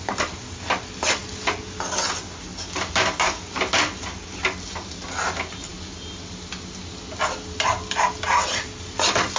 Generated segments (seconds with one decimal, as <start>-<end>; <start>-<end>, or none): none